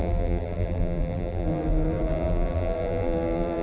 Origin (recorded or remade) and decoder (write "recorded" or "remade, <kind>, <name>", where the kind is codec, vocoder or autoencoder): remade, vocoder, BigVGAN v2